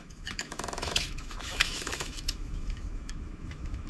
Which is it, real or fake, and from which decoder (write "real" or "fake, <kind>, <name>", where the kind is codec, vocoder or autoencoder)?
fake, autoencoder, DAC-VAE